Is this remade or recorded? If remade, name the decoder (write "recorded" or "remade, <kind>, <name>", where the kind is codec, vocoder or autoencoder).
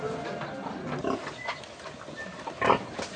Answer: recorded